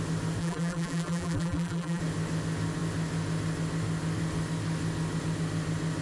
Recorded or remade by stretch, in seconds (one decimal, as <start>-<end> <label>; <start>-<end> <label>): 0.0-0.4 recorded; 0.4-2.0 remade; 2.0-6.0 recorded